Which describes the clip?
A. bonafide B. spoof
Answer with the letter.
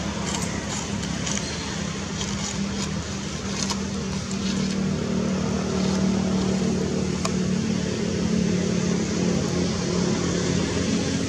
A